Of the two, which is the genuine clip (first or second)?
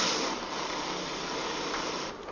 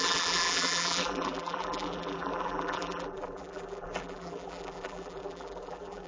first